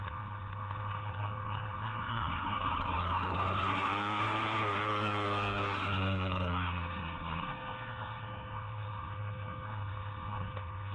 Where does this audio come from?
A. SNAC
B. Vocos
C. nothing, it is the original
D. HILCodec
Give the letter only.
A